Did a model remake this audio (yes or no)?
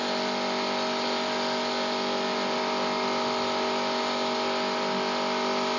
no